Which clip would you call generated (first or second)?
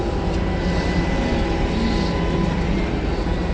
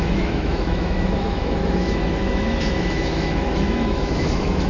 second